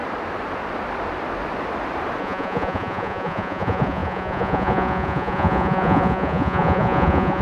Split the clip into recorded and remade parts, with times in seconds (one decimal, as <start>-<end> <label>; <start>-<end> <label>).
0.0-2.2 recorded; 2.2-7.4 remade